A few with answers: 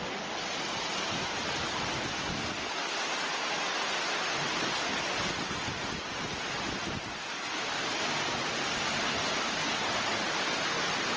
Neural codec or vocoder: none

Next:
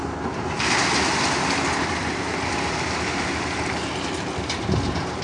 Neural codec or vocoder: none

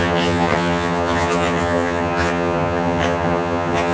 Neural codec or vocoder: vocoder, HiFi-GAN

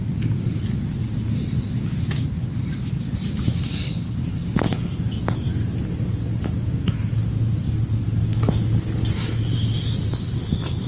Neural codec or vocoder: none